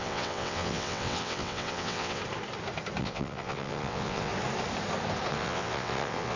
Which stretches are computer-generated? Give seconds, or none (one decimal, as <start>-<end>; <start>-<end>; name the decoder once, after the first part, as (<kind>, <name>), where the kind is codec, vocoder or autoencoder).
0.0-2.2 (vocoder, WaveNeXt); 3.0-4.3; 5.3-6.4